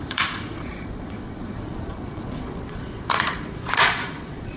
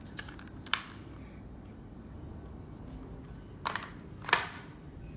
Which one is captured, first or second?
second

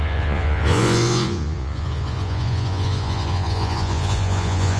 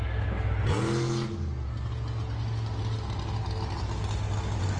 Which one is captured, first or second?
second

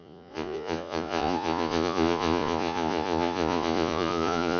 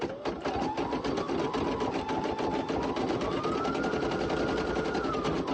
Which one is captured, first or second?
second